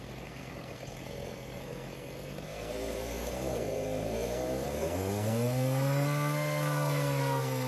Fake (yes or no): yes